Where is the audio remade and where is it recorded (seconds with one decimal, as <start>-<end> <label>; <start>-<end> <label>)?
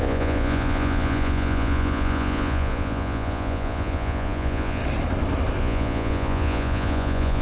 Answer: 0.0-4.8 remade; 4.8-5.6 recorded; 5.6-7.4 remade